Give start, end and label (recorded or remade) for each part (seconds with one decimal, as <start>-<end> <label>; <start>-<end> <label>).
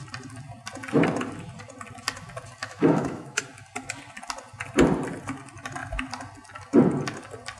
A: 0.0-2.6 recorded; 2.6-3.4 remade; 3.4-7.6 recorded